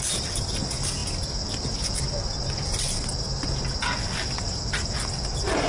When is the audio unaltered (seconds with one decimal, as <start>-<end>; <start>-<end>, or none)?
0.0-5.7